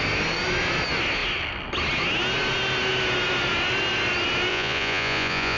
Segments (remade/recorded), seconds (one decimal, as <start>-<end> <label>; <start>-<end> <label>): 0.0-4.5 recorded; 4.5-5.6 remade